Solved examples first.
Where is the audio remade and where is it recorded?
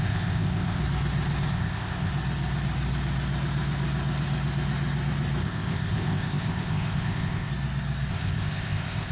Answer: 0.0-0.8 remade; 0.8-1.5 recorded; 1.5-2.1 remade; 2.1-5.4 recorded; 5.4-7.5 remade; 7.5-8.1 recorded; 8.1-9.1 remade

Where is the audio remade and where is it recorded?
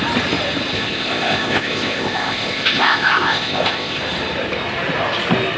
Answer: 0.0-0.7 recorded; 0.7-4.0 remade; 4.0-5.6 recorded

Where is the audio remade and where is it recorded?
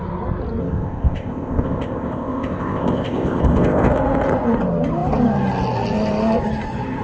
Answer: 0.0-0.6 recorded; 0.6-3.9 remade; 3.9-7.0 recorded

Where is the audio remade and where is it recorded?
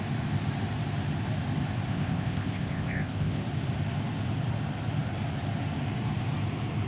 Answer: 0.0-1.9 recorded; 1.9-3.4 remade; 3.4-6.9 recorded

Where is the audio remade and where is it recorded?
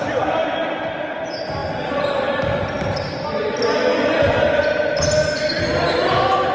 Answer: 0.0-6.5 recorded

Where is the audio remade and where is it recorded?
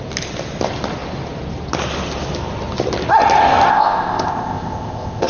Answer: 0.0-3.7 recorded; 3.7-5.3 remade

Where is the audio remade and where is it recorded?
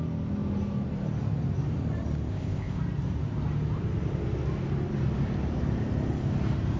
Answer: 0.0-2.3 recorded; 2.3-2.8 remade; 2.8-6.8 recorded